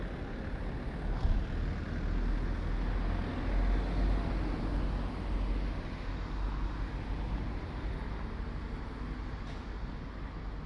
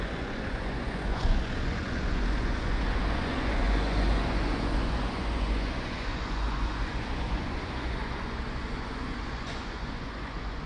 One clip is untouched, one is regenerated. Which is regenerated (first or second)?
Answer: second